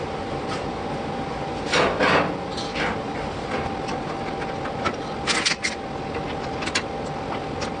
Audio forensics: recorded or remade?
recorded